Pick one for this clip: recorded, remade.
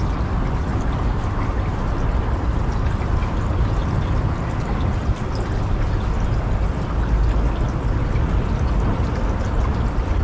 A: recorded